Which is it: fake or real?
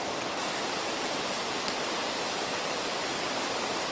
fake